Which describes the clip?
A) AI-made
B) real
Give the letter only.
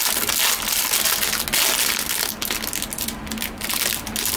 B